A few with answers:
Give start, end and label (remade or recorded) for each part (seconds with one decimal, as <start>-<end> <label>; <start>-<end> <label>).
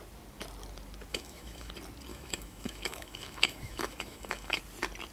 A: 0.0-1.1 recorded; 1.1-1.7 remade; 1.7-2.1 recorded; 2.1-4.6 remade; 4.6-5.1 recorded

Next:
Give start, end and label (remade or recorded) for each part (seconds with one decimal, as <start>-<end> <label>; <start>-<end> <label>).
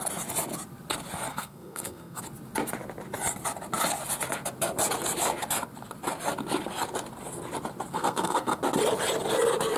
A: 0.0-1.3 recorded; 1.3-2.2 remade; 2.2-7.9 recorded; 7.9-8.6 remade; 8.6-9.8 recorded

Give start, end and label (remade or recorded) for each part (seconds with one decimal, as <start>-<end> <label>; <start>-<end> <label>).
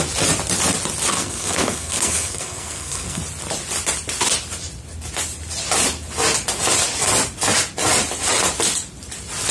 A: 0.0-1.1 recorded; 1.1-3.2 remade; 3.2-9.5 recorded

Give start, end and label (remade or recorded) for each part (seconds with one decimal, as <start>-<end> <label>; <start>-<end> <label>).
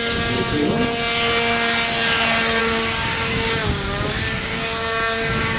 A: 0.0-0.6 remade; 0.6-2.6 recorded; 2.6-5.6 remade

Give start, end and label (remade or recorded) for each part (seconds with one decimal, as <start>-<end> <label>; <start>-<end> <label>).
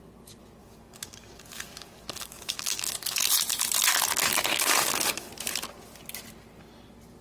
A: 0.0-0.6 recorded; 0.6-3.2 remade; 3.2-4.5 recorded; 4.5-5.3 remade; 5.3-7.2 recorded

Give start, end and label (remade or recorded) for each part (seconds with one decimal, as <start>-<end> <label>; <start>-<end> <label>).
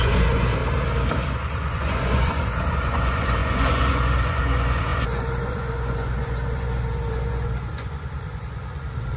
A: 0.0-0.6 remade; 0.6-1.3 recorded; 1.3-9.2 remade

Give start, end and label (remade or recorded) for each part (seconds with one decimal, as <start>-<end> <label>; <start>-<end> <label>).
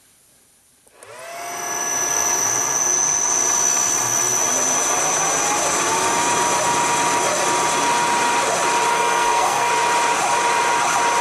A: 0.0-8.9 recorded; 8.9-9.7 remade; 9.7-11.2 recorded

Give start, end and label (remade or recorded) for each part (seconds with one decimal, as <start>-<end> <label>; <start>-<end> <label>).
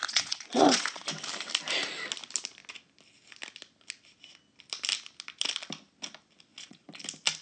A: 0.0-1.1 remade; 1.1-6.5 recorded; 6.5-7.0 remade; 7.0-7.4 recorded